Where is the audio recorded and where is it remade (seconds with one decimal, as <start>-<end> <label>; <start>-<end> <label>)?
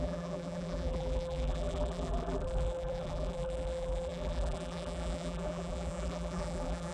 0.0-6.9 remade